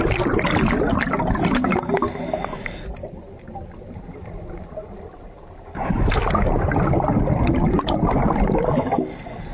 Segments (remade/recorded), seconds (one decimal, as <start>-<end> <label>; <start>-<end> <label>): 0.0-9.5 recorded